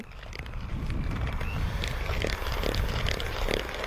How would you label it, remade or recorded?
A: recorded